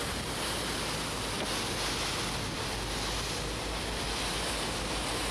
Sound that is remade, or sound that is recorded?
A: recorded